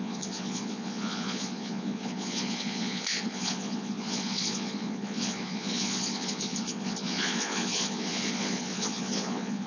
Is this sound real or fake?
fake